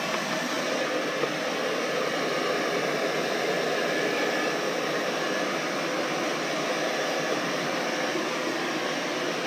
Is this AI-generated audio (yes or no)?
no